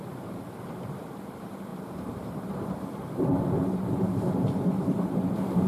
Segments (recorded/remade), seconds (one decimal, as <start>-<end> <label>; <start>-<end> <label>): 0.0-5.7 remade